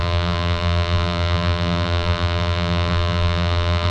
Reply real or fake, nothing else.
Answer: fake